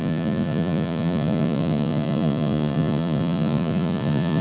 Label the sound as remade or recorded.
remade